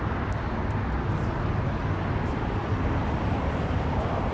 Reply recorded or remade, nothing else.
remade